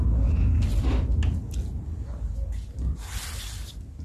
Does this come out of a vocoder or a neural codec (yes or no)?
no